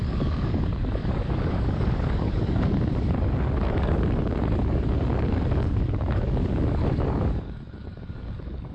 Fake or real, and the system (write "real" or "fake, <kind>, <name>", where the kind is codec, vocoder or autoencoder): fake, codec, DAC